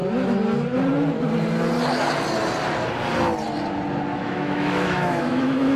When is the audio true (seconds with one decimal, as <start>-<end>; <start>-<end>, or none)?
0.0-4.1